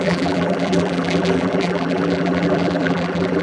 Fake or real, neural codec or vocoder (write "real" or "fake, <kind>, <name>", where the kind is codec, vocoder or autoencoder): fake, vocoder, BigVGAN v2